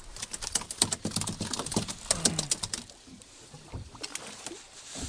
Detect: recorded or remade recorded